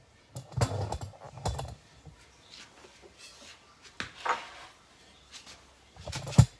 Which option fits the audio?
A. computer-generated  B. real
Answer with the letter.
B